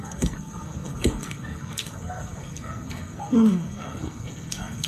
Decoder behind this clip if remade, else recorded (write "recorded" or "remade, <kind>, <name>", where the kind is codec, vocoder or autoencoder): remade, codec, SNAC